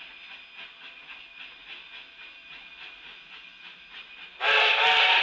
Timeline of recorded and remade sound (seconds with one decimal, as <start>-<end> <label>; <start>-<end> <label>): 0.0-5.2 recorded